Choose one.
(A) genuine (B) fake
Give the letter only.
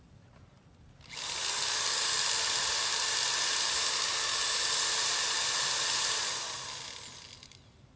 A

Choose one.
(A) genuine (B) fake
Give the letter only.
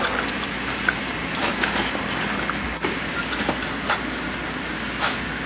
A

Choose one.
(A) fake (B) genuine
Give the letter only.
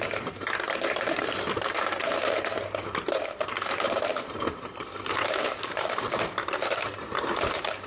A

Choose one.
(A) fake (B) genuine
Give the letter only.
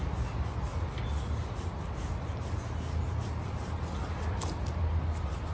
B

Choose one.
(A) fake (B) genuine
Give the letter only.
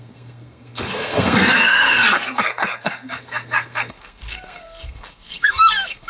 A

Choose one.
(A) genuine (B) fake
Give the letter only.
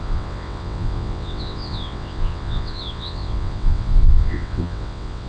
B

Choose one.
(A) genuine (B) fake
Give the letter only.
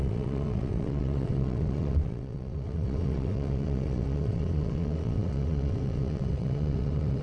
B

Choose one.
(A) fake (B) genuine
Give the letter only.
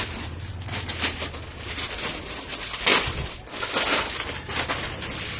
B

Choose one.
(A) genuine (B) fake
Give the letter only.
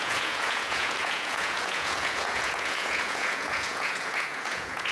B